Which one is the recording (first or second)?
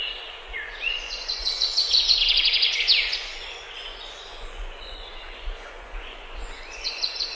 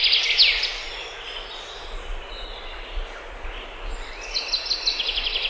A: second